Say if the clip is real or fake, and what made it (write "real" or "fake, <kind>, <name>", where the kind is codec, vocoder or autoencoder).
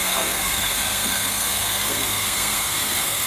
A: fake, codec, SNAC